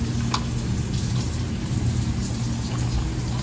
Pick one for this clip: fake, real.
real